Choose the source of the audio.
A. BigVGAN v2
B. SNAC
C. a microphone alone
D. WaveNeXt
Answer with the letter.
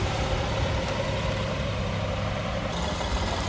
C